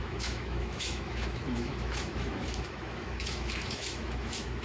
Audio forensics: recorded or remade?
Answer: remade